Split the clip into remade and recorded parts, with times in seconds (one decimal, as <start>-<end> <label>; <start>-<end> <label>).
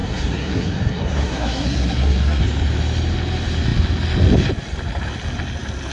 0.0-2.4 remade; 2.4-5.9 recorded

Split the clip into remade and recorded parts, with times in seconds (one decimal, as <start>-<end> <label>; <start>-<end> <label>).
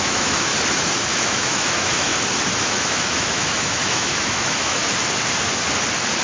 0.0-0.5 remade; 0.5-1.1 recorded; 1.1-2.1 remade; 2.1-2.6 recorded; 2.6-4.8 remade; 4.8-6.2 recorded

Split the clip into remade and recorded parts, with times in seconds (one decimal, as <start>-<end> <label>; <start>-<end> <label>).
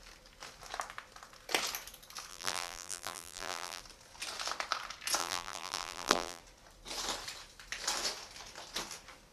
0.0-2.3 recorded; 2.3-3.8 remade; 3.8-5.2 recorded; 5.2-6.4 remade; 6.4-9.3 recorded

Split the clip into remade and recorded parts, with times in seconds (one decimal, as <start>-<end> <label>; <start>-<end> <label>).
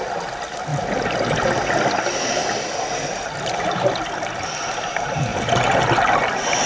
0.0-6.7 recorded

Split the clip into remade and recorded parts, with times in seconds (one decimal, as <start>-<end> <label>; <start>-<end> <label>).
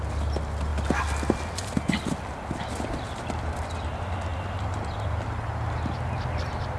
0.0-6.8 recorded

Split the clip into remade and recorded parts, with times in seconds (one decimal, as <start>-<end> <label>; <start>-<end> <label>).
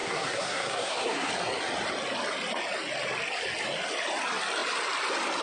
0.0-1.3 remade; 1.3-5.4 recorded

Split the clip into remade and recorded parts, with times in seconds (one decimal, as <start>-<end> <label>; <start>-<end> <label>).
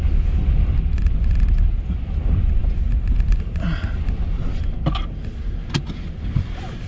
0.0-6.9 recorded